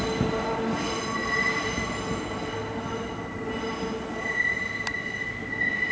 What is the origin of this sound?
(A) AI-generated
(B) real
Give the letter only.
B